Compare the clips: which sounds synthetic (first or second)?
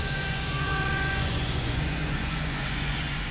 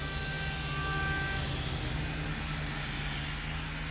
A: first